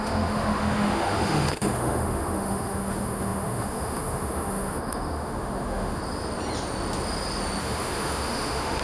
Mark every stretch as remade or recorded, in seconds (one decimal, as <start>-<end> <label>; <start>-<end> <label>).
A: 0.0-6.0 remade; 6.0-7.6 recorded; 7.6-8.8 remade